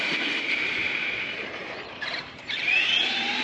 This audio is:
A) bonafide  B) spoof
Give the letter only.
B